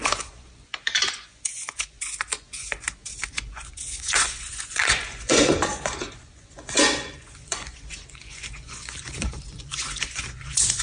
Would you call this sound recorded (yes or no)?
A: no